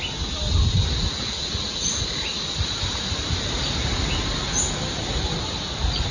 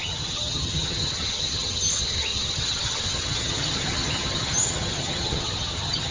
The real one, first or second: first